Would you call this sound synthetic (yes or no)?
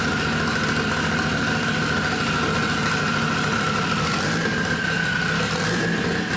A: no